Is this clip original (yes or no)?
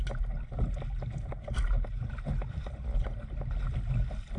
yes